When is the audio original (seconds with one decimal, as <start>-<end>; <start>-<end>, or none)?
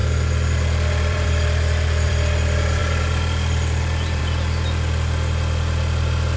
2.1-2.8; 4.2-6.4